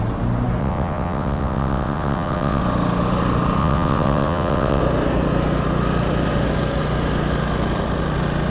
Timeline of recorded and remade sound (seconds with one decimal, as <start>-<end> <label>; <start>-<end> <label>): 0.0-0.6 recorded; 0.6-2.6 remade; 2.6-3.6 recorded; 3.6-4.8 remade; 4.8-8.5 recorded